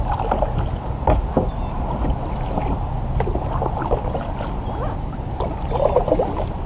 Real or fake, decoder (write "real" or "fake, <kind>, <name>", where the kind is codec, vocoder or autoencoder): real